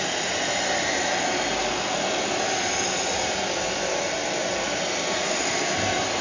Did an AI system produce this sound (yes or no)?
no